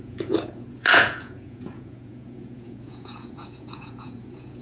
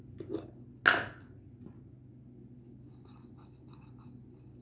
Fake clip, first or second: first